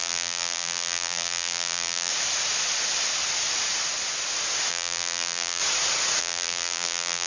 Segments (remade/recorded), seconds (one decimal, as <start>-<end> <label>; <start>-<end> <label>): 0.0-2.1 remade; 2.1-4.7 recorded; 4.7-5.6 remade; 5.6-6.2 recorded; 6.2-7.3 remade